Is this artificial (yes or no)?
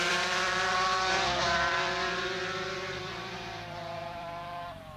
yes